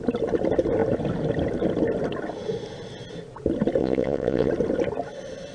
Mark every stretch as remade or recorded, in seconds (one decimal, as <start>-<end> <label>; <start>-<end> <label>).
0.0-3.8 recorded; 3.8-4.5 remade; 4.5-5.5 recorded